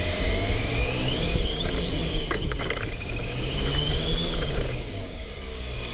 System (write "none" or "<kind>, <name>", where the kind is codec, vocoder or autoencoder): codec, DAC